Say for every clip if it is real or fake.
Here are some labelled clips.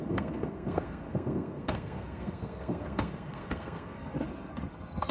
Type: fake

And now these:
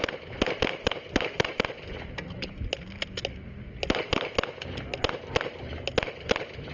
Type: real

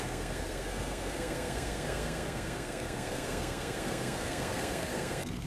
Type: fake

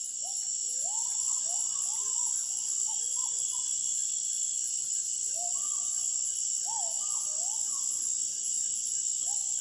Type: real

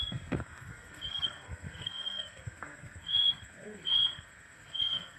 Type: fake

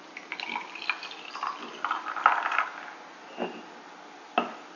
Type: real